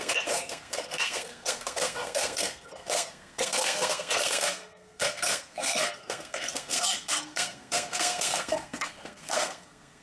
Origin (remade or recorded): remade